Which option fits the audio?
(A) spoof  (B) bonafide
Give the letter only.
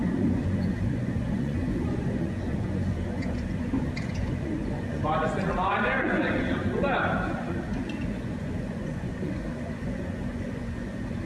A